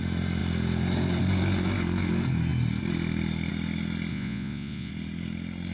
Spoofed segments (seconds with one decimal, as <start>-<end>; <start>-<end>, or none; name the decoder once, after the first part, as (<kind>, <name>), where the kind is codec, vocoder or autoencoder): 4.1-4.9 (vocoder, Vocos)